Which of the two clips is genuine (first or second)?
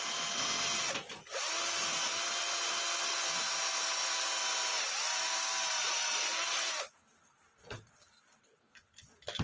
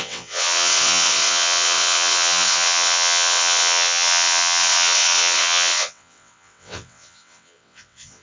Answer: first